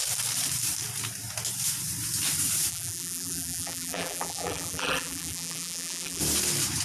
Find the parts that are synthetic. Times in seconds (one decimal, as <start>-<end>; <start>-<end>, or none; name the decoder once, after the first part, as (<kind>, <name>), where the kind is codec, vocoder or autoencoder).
2.7-6.2 (vocoder, BigVGAN v2)